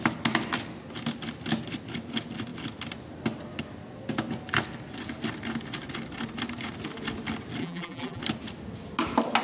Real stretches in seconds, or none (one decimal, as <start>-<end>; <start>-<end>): 0.0-7.6; 8.2-9.4